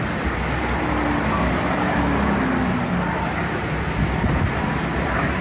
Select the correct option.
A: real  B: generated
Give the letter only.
A